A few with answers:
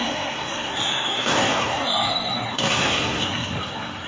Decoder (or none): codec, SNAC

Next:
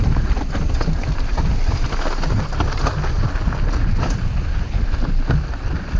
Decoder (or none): none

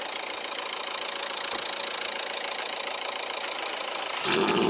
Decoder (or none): none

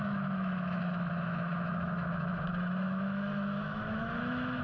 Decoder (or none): autoencoder, DAC-VAE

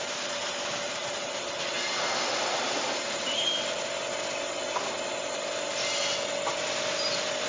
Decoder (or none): none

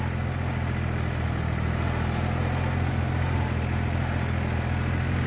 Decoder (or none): none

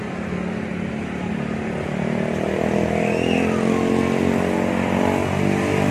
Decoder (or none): none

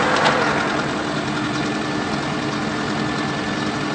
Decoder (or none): none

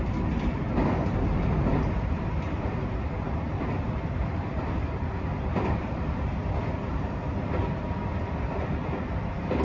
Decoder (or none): vocoder, BigVGAN v2